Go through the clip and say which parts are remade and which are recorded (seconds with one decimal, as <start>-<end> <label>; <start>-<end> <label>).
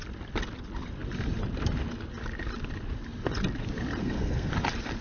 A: 0.0-4.0 recorded; 4.0-4.5 remade; 4.5-5.0 recorded